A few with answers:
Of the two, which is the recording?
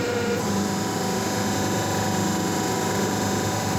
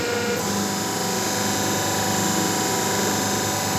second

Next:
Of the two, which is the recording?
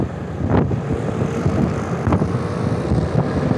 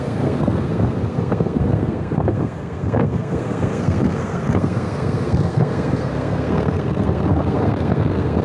first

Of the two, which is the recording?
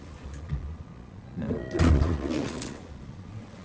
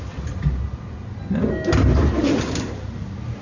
second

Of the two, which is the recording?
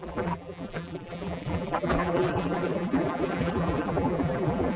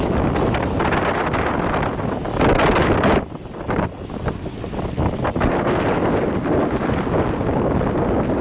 second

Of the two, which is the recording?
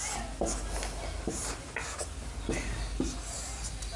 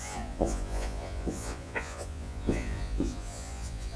first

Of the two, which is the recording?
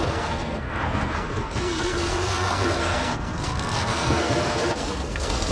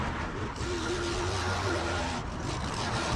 second